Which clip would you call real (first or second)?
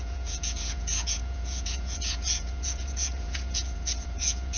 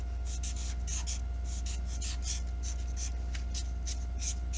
second